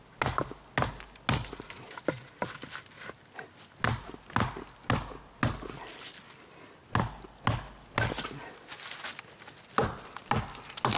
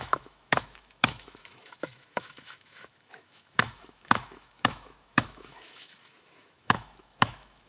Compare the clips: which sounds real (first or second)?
first